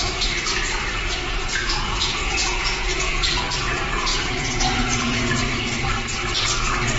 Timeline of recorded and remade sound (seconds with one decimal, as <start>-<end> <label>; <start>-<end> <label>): 0.0-1.4 recorded; 1.4-3.4 remade; 3.4-4.1 recorded; 4.1-4.6 remade; 4.6-7.0 recorded